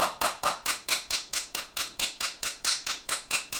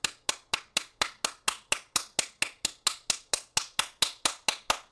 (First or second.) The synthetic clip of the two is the first